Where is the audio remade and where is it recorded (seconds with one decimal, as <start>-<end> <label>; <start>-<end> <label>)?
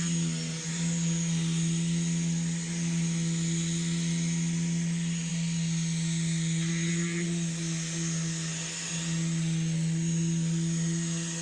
0.0-11.4 recorded